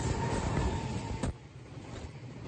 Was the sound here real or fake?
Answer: real